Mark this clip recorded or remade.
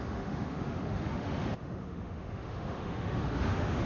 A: remade